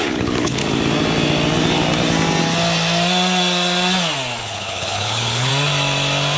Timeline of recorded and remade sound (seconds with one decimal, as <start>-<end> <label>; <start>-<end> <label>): 0.0-0.6 remade; 0.6-4.4 recorded; 4.4-5.5 remade; 5.5-6.4 recorded